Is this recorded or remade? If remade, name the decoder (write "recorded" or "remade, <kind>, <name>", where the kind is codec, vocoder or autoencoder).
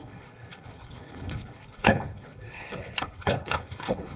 remade, codec, HILCodec